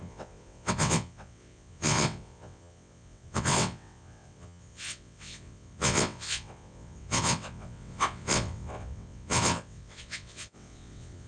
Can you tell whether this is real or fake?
fake